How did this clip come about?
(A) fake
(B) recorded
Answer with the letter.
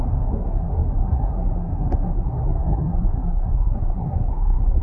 A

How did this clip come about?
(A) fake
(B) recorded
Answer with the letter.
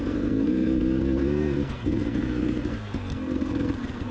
A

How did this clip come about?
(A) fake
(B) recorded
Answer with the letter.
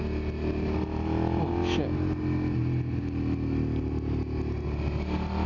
B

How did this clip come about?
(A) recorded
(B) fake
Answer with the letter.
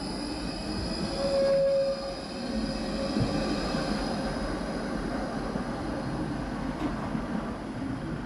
A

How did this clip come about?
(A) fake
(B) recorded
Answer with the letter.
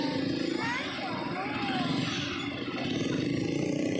B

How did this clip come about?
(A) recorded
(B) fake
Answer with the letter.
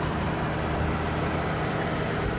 A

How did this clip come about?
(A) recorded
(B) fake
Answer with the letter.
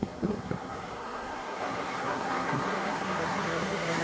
B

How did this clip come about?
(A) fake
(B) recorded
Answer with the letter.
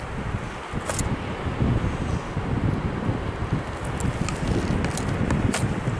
B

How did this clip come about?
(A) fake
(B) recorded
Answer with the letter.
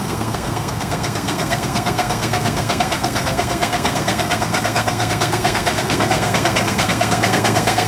A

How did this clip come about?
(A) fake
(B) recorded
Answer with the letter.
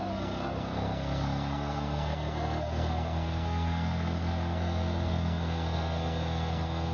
A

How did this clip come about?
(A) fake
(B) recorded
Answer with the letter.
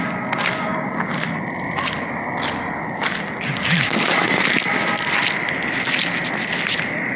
B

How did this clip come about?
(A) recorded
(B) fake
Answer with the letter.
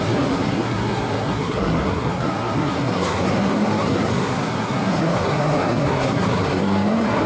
B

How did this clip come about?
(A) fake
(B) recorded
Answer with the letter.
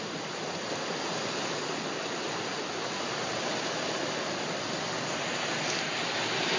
B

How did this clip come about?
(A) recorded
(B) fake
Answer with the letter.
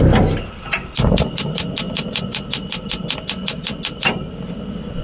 A